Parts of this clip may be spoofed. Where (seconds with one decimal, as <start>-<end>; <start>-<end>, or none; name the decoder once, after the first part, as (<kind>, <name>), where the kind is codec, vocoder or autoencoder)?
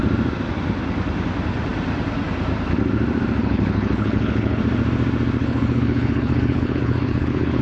3.4-4.6 (codec, HILCodec); 5.4-7.6